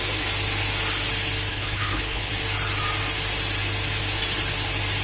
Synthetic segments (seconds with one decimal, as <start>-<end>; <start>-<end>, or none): 1.5-2.3